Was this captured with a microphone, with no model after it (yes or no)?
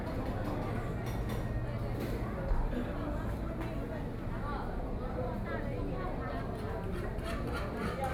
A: yes